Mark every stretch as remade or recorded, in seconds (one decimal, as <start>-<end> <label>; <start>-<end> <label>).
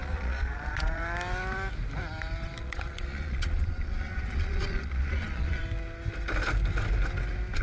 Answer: 0.0-1.0 remade; 1.0-2.6 recorded; 2.6-5.6 remade; 5.6-7.6 recorded